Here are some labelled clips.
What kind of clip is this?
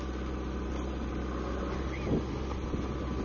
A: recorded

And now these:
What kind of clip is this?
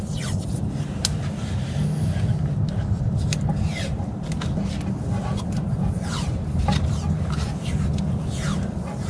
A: recorded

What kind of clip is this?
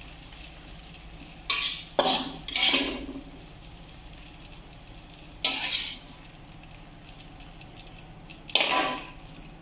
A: recorded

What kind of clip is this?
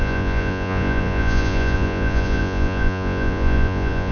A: remade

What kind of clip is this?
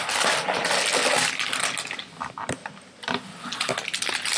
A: recorded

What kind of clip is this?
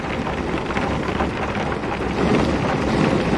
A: recorded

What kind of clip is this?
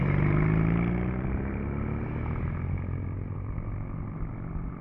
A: recorded